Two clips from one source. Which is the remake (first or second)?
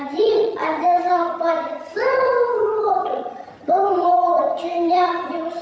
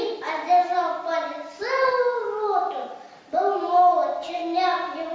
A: first